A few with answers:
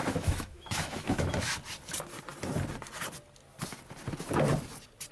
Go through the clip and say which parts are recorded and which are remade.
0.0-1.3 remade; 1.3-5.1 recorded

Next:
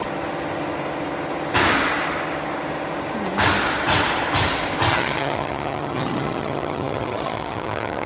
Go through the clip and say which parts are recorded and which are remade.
0.0-4.9 recorded; 4.9-8.1 remade

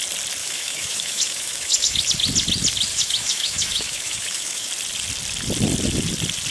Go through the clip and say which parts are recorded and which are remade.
0.0-0.4 recorded; 0.4-2.0 remade; 2.0-2.9 recorded; 2.9-4.7 remade; 4.7-6.5 recorded

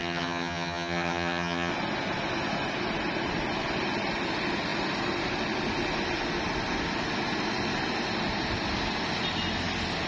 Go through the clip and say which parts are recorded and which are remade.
0.0-1.7 remade; 1.7-10.1 recorded

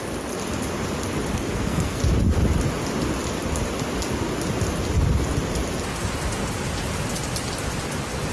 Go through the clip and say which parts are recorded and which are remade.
0.0-1.3 recorded; 1.3-2.0 remade; 2.0-8.3 recorded

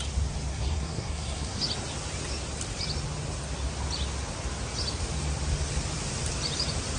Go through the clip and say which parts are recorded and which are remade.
0.0-0.5 recorded; 0.5-1.6 remade; 1.6-7.0 recorded